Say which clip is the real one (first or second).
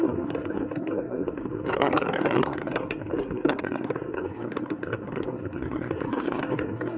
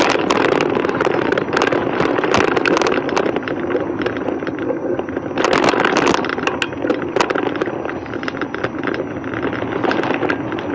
second